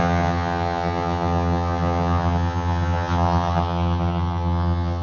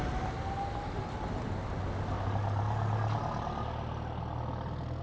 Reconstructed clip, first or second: first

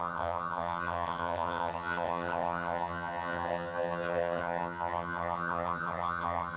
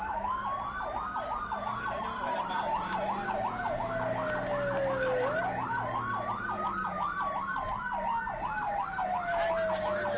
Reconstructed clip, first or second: first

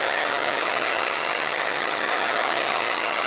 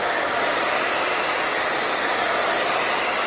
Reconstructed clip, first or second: first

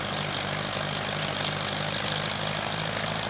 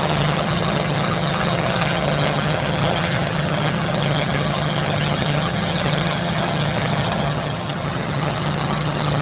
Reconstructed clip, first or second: second